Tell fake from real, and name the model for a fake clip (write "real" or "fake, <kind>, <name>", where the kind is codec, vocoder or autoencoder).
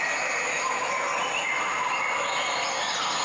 real